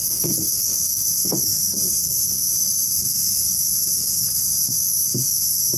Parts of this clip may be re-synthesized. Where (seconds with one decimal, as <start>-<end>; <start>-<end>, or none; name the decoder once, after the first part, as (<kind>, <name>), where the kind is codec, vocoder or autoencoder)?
0.0-5.8 (codec, SNAC)